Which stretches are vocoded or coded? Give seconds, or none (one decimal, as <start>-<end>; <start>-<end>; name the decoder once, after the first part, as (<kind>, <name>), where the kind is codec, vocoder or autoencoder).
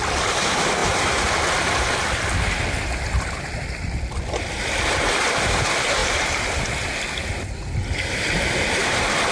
none